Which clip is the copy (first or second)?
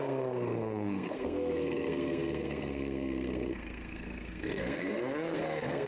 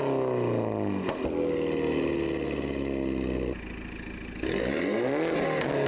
first